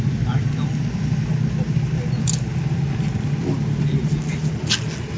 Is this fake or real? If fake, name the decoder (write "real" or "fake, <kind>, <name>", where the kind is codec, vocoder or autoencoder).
real